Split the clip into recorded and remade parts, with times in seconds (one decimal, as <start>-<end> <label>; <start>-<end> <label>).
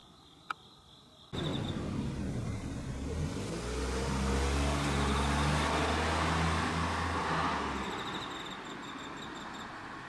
0.0-10.1 recorded